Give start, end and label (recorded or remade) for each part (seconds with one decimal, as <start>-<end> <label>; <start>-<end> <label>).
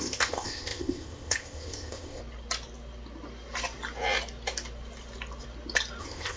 0.0-2.2 remade; 2.2-6.0 recorded; 6.0-6.4 remade